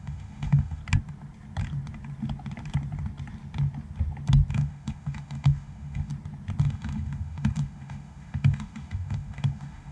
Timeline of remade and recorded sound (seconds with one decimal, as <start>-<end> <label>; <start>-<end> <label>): 0.0-0.8 remade; 0.8-4.5 recorded; 4.5-6.1 remade; 6.1-6.6 recorded; 6.6-9.9 remade